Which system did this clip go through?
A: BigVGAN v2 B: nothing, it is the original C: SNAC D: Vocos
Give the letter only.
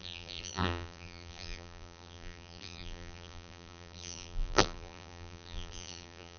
A